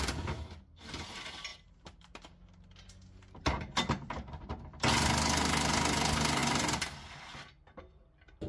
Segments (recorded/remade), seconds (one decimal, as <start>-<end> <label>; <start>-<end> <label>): 0.0-8.5 recorded